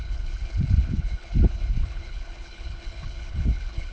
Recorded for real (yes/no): no